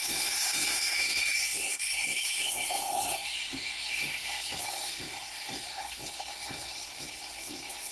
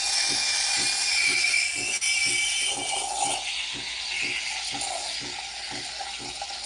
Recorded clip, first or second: second